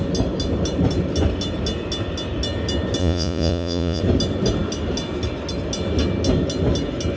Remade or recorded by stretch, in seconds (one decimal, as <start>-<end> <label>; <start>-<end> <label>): 0.0-3.0 recorded; 3.0-4.0 remade; 4.0-7.2 recorded